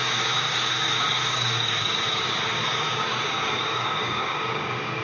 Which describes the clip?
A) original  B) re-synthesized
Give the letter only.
B